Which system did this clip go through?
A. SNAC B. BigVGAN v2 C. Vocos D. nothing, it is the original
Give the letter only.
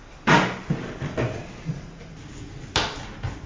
D